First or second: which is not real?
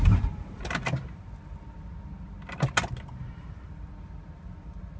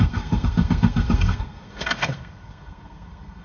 second